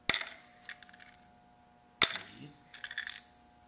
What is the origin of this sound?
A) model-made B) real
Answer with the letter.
B